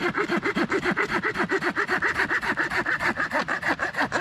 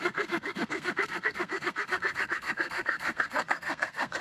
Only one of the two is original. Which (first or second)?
first